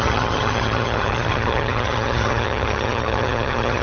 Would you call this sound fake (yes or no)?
yes